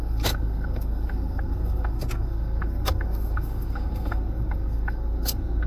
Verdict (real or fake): fake